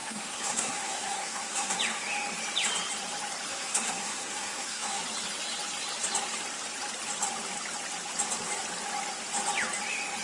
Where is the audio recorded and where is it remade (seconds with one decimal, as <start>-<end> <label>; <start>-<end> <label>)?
0.0-1.8 remade; 1.8-3.5 recorded; 3.5-5.0 remade; 5.0-10.2 recorded